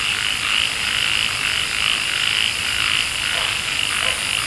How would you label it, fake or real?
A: real